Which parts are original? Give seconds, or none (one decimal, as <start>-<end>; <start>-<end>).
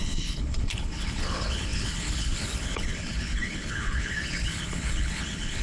none